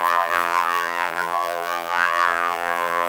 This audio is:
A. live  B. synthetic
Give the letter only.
B